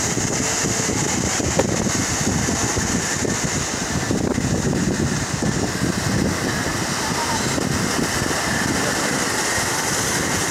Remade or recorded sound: recorded